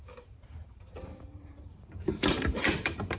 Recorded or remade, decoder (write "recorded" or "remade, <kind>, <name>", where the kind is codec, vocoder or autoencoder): remade, vocoder, BigVGAN v2